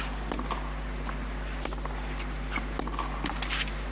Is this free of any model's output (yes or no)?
yes